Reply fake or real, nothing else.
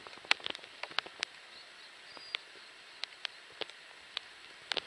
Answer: real